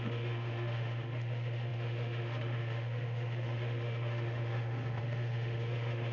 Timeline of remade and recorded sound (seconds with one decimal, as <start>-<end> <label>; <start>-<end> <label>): 0.0-6.1 remade